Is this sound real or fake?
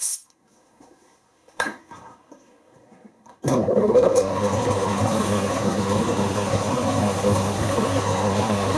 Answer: fake